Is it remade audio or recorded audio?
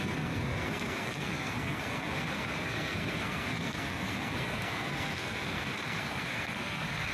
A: remade